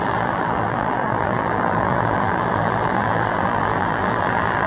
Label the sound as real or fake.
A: fake